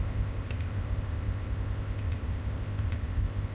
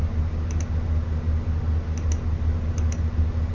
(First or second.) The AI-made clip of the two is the first